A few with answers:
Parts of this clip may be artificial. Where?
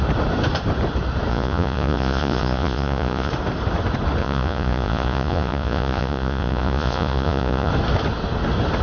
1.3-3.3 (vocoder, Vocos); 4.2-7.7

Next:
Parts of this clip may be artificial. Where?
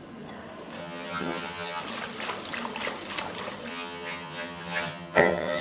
0.8-1.8 (vocoder, HiFi-GAN); 3.7-5.6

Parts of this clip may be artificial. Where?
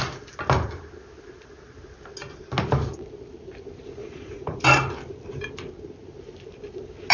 4.0-4.6 (vocoder, Vocos)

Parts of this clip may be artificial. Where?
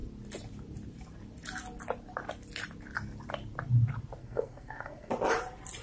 4.2-5.1 (codec, SNAC)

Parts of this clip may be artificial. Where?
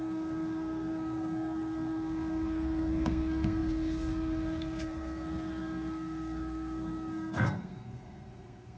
0.0-8.8 (codec, SNAC)